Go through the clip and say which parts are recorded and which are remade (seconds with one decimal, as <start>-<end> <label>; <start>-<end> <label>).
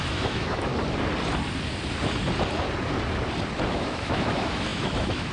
0.0-0.7 remade; 0.7-3.7 recorded; 3.7-5.3 remade